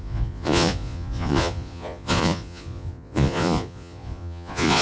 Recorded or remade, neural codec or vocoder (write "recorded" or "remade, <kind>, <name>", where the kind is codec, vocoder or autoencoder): remade, vocoder, Vocos